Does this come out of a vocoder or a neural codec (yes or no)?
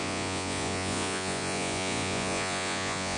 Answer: yes